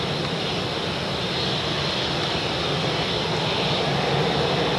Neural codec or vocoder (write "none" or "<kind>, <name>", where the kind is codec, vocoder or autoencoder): none